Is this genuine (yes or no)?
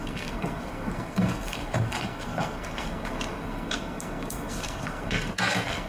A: no